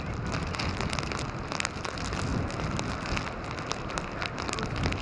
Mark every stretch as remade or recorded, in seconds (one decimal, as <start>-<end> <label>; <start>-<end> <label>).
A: 0.0-5.0 recorded